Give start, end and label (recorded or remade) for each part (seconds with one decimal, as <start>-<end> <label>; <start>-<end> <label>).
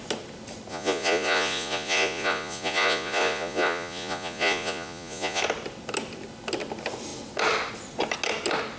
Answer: 0.0-0.7 recorded; 0.7-5.4 remade; 5.4-8.8 recorded